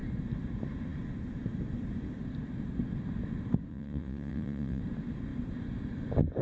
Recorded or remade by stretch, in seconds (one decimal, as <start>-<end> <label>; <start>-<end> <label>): 0.0-3.7 recorded; 3.7-4.8 remade; 4.8-6.4 recorded